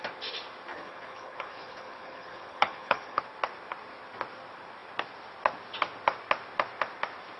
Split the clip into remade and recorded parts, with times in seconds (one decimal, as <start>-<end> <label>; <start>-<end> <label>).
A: 0.0-0.7 recorded; 0.7-3.2 remade; 3.2-7.4 recorded